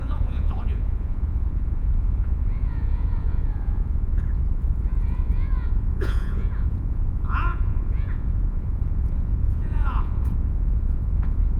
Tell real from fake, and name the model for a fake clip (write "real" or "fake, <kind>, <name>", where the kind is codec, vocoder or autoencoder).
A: fake, vocoder, Vocos